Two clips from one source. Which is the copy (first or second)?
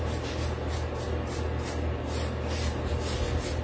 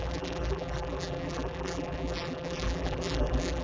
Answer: second